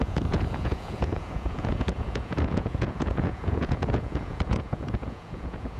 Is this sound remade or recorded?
remade